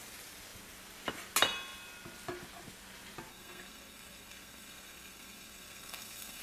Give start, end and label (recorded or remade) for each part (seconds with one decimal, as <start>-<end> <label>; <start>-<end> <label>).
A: 0.0-3.3 recorded; 3.3-6.4 remade